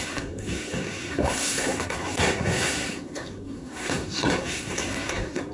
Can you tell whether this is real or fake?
fake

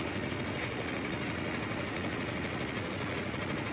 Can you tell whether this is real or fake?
fake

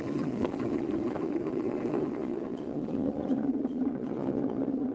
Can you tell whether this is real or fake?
fake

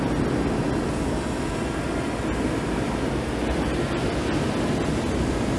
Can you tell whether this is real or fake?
real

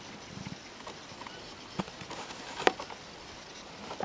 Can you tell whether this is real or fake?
real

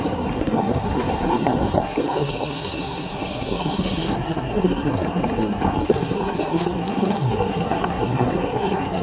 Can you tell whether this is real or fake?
fake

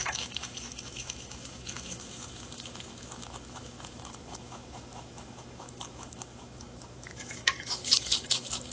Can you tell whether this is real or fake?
fake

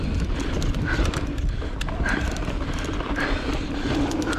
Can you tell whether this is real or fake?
real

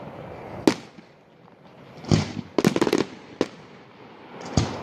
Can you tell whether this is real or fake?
real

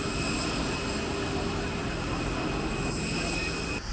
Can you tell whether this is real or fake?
real